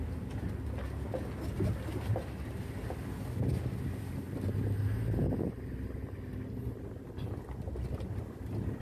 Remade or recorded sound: recorded